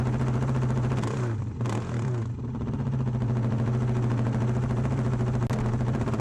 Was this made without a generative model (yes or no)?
yes